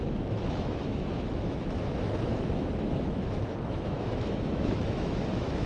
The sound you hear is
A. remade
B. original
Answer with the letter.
A